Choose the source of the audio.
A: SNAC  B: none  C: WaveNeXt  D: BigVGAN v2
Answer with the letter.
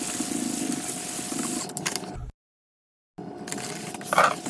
B